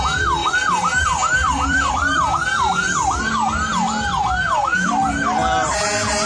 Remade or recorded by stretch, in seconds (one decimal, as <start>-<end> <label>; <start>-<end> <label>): 0.0-0.4 recorded; 0.4-1.9 remade; 1.9-6.3 recorded

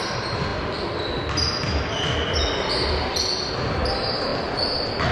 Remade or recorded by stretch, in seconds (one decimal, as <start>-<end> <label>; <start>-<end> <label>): 0.0-5.1 recorded